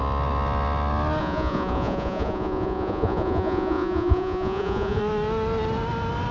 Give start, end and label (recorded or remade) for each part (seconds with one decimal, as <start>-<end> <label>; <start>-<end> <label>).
0.0-1.2 recorded; 1.2-5.0 remade; 5.0-6.3 recorded